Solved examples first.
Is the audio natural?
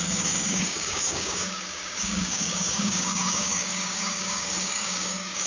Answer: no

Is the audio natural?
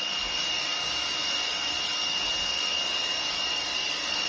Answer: no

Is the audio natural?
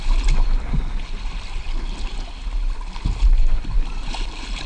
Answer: yes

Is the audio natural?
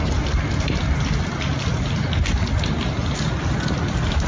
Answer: yes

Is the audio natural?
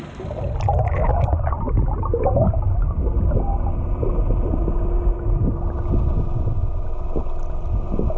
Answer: yes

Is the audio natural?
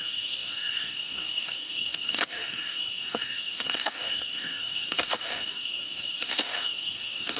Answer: no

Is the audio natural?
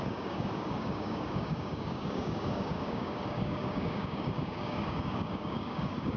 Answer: no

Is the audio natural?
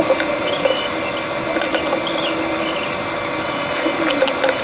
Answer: yes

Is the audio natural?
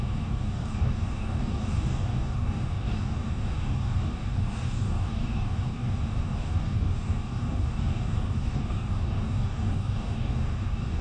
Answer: no